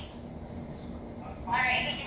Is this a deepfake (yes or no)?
no